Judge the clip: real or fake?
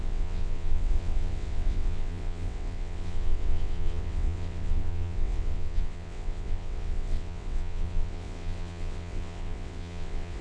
fake